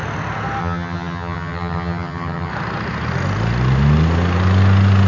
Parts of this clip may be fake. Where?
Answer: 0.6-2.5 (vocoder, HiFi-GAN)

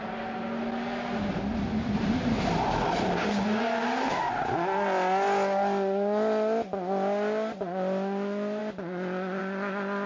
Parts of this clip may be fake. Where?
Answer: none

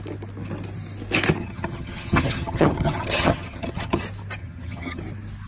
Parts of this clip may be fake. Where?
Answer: 1.4-4.0 (vocoder, HiFi-GAN); 4.4-5.0